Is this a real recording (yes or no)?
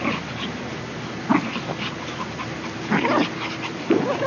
yes